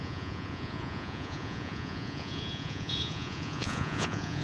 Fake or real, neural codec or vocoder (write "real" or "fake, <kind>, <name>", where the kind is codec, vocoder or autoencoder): fake, vocoder, Vocos